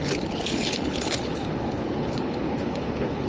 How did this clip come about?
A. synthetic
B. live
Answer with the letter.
A